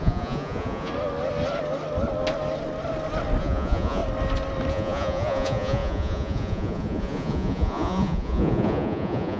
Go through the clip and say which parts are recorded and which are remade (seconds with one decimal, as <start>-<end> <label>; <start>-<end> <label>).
0.0-0.9 remade; 0.9-3.4 recorded; 3.4-4.0 remade; 4.0-4.7 recorded; 4.7-9.4 remade